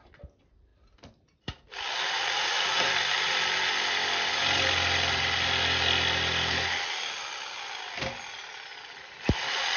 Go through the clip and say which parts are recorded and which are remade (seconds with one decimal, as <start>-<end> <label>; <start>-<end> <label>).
0.0-0.7 recorded; 0.7-3.8 remade; 3.8-9.8 recorded